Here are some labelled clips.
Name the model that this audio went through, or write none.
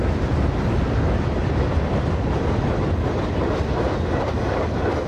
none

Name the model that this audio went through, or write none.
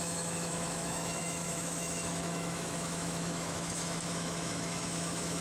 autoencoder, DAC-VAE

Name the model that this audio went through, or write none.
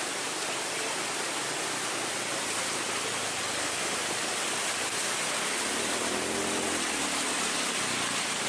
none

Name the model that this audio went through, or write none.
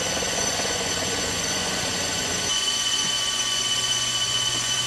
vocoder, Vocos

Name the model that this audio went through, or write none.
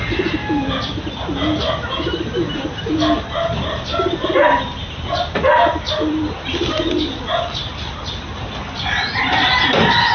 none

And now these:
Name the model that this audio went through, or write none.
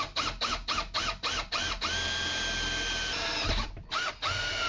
none